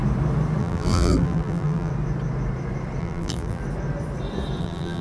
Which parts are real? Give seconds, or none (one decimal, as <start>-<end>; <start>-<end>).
0.0-0.6; 1.9-3.0; 3.6-4.6

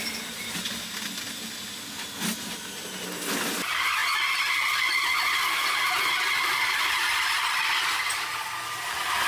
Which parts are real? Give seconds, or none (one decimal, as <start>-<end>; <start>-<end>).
0.0-9.3

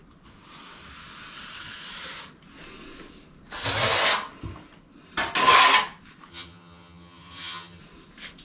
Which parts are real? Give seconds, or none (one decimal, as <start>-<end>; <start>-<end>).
0.0-6.3; 7.8-8.4